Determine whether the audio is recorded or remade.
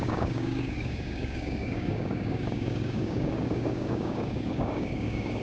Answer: remade